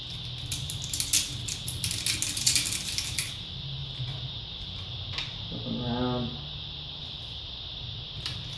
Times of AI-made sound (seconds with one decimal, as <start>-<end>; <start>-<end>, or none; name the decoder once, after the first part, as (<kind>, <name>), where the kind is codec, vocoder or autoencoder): none